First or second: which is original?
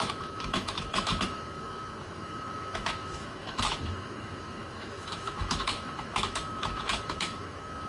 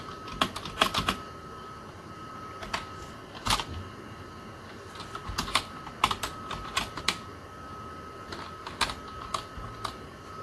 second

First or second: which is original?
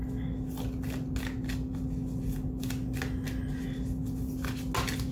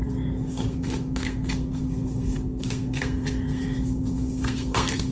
first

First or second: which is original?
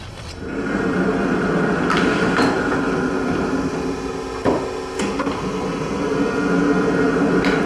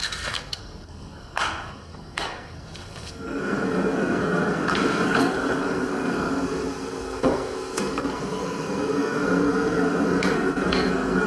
first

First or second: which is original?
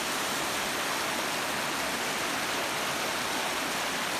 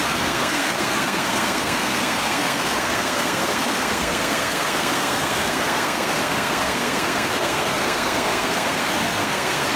first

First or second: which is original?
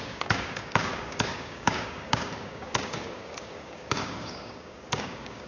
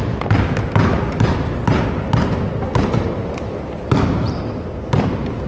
second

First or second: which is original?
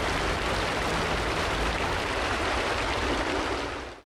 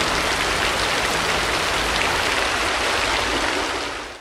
second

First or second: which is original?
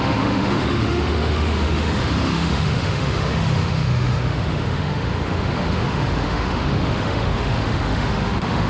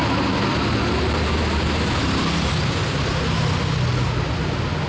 second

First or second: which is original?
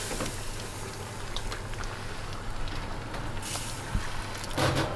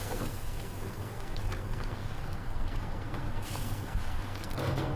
first